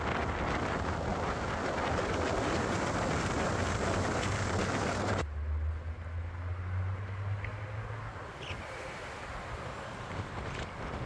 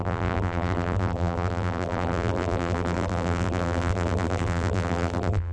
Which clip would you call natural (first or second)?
first